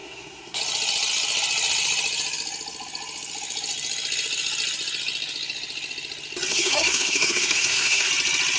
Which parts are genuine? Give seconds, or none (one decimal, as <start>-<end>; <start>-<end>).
0.6-6.5; 8.1-8.6